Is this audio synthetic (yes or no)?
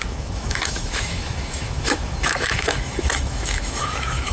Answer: yes